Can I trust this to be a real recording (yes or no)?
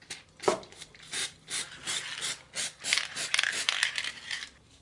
yes